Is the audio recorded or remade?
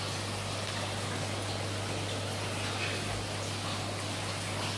recorded